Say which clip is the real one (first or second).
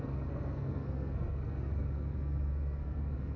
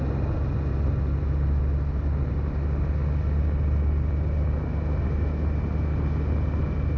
second